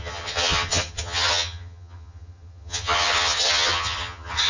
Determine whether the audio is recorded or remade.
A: remade